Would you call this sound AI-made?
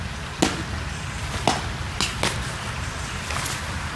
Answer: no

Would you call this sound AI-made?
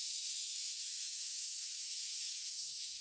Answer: yes